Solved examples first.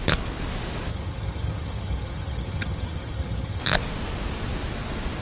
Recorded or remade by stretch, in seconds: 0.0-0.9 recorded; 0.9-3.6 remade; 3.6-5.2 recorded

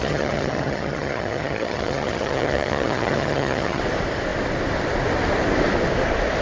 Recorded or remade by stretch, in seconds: 0.0-3.8 remade; 3.8-6.4 recorded

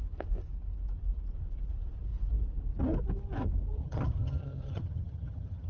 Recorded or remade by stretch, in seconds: 0.0-3.8 recorded; 3.8-5.7 remade

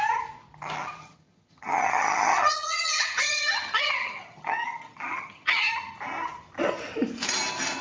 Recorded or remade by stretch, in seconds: 0.0-1.0 recorded; 1.0-5.7 remade; 5.7-7.8 recorded

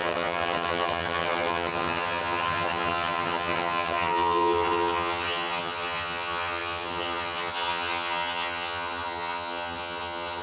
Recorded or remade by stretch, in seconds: 0.0-10.4 remade